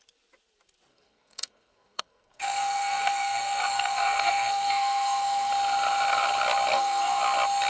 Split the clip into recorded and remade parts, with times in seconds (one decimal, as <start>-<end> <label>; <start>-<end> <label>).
0.0-0.9 recorded; 0.9-5.5 remade; 5.5-6.7 recorded; 6.7-7.2 remade; 7.2-7.7 recorded